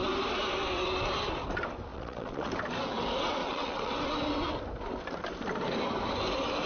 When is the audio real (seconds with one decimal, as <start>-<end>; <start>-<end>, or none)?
0.0-1.9; 2.5-3.4; 4.0-6.7